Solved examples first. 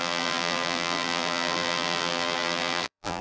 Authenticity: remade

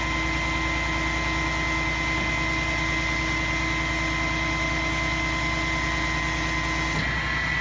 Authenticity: recorded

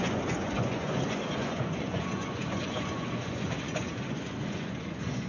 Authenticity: remade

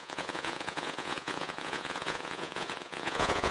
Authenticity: remade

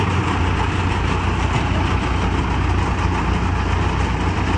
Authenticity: recorded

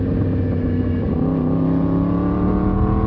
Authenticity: recorded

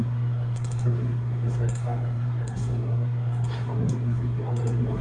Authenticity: remade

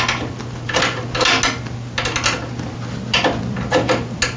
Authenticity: recorded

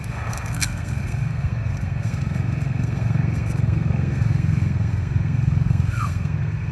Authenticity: remade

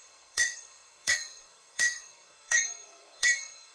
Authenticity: remade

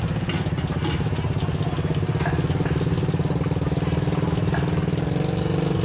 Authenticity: recorded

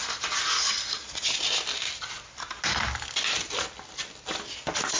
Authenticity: recorded